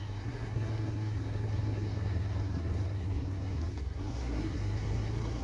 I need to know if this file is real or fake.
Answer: fake